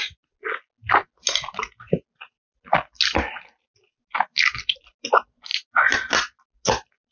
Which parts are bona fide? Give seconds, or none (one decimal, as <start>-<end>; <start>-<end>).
0.0-7.1